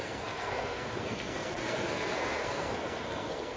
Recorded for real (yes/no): no